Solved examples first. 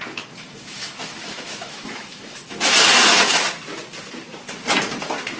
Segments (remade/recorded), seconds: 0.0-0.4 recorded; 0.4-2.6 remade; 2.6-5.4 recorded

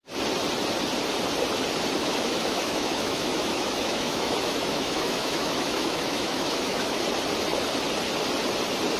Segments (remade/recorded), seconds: 0.0-2.0 recorded; 2.0-7.0 remade; 7.0-9.0 recorded

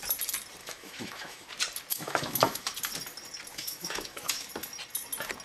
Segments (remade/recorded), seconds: 0.0-0.6 recorded; 0.6-1.5 remade; 1.5-1.9 recorded; 1.9-2.7 remade; 2.7-3.5 recorded; 3.5-4.5 remade; 4.5-5.4 recorded

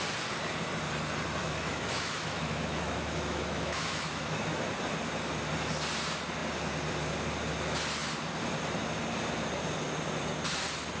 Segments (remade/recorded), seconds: 0.0-1.4 recorded; 1.4-4.6 remade; 4.6-11.0 recorded

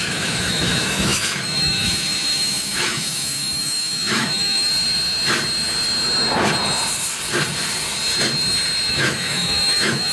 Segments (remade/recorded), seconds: 0.0-4.7 remade; 4.7-8.9 recorded; 8.9-10.1 remade